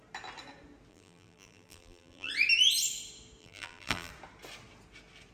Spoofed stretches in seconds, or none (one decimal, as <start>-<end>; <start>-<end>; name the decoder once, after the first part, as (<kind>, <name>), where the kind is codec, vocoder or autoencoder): 0.9-2.3 (vocoder, BigVGAN v2); 3.4-4.1